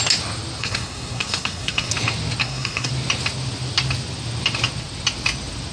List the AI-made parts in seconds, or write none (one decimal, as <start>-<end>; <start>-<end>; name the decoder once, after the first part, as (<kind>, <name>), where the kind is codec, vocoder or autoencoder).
0.6-1.9 (codec, SNAC); 2.4-2.9